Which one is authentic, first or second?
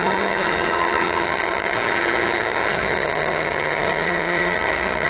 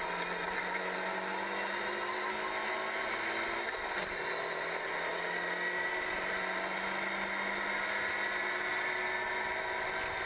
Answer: second